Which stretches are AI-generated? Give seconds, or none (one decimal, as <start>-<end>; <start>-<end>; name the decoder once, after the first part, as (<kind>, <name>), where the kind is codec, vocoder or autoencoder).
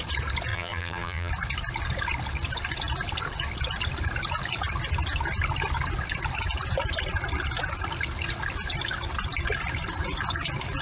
0.5-1.3 (vocoder, BigVGAN v2)